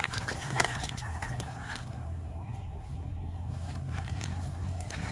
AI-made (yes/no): yes